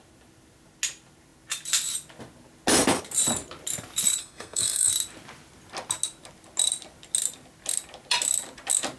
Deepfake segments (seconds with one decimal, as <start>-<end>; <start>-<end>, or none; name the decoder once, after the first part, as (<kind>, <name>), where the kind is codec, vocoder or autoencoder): 4.2-4.9 (codec, SNAC)